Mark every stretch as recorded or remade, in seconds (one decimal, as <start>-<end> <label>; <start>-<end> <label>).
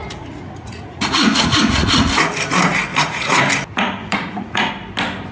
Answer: 0.0-2.1 remade; 2.1-2.9 recorded; 2.9-3.4 remade; 3.4-4.0 recorded; 4.0-4.7 remade; 4.7-5.3 recorded